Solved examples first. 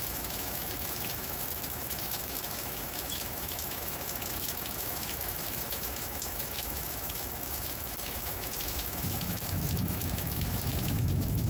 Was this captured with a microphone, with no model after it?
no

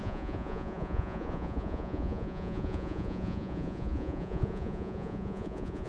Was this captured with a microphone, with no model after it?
no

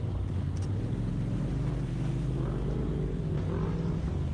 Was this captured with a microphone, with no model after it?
yes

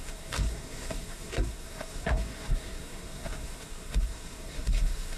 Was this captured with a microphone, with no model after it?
no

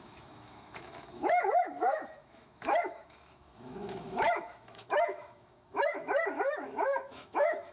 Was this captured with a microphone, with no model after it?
no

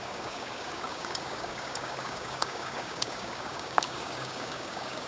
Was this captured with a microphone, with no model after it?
no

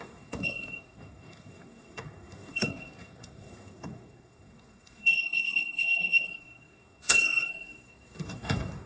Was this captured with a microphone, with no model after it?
no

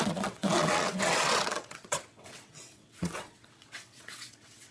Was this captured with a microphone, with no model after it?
no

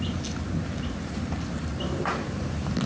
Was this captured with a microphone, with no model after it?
yes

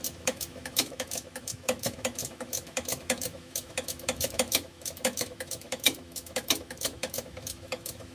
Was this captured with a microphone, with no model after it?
no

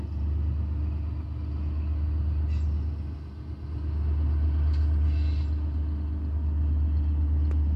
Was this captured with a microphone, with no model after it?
yes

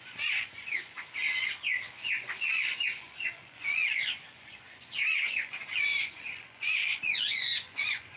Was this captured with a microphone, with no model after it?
no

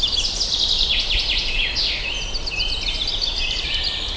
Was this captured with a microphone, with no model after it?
yes